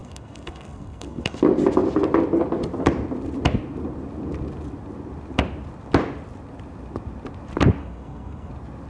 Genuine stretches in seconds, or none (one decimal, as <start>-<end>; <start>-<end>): 1.4-7.8; 8.5-8.9